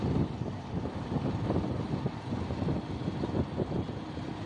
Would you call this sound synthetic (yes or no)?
yes